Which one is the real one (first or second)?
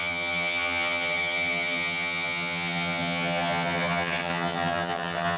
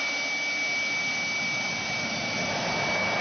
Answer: second